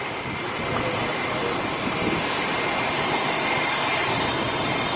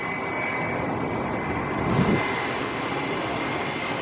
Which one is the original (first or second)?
second